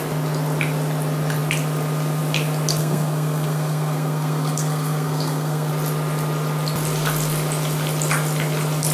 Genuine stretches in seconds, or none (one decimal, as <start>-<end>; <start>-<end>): 0.0-2.8; 5.7-8.9